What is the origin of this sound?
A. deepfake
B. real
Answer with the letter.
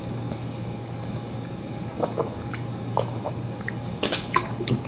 A